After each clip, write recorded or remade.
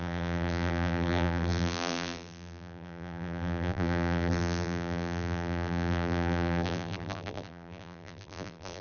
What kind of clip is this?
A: remade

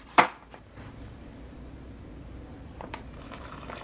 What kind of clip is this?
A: remade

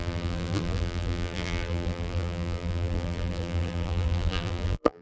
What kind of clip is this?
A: remade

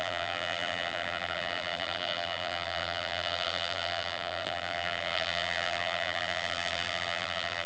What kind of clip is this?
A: remade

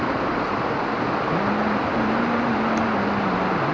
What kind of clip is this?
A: recorded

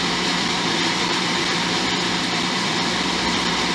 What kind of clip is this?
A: remade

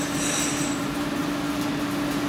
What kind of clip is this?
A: recorded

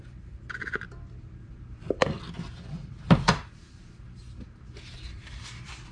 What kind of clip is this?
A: remade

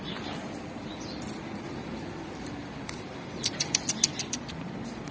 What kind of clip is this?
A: remade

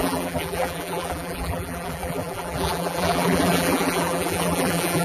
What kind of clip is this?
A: remade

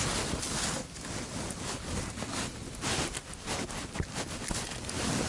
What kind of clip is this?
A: recorded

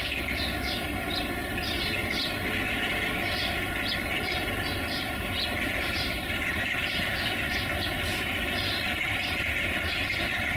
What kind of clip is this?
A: remade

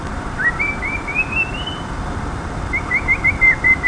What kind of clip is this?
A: remade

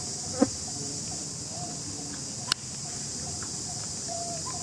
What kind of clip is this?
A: recorded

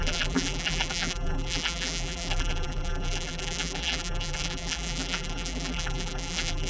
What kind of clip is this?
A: remade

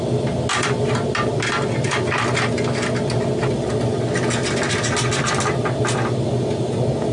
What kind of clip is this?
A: recorded